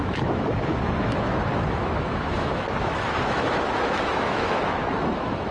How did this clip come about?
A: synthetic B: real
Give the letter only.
A